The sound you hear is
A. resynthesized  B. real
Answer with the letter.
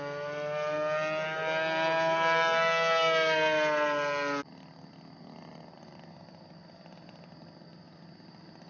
B